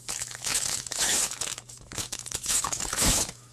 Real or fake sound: fake